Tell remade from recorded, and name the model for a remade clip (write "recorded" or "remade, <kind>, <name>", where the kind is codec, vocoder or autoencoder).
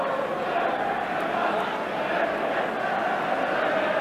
recorded